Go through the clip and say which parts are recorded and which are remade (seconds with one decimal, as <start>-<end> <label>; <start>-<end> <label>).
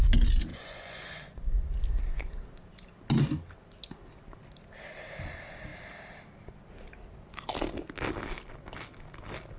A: 0.0-0.5 recorded; 0.5-1.7 remade; 1.7-9.6 recorded